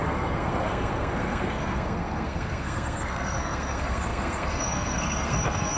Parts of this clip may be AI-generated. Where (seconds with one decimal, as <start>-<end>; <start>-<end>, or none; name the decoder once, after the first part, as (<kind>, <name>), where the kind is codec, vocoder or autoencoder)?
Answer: 0.0-5.8 (codec, SNAC)